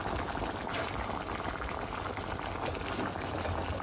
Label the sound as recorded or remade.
recorded